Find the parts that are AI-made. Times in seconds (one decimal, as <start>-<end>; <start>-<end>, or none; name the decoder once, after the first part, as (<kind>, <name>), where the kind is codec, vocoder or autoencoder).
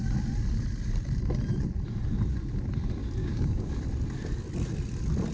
3.2-3.7 (codec, DAC)